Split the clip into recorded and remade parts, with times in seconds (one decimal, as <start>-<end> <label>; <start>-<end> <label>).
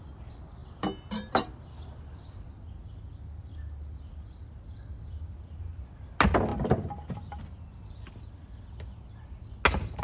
0.0-0.6 recorded; 0.6-2.0 remade; 2.0-10.0 recorded